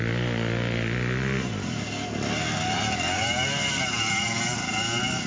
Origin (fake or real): real